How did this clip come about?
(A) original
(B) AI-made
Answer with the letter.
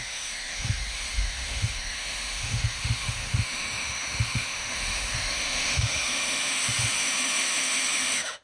B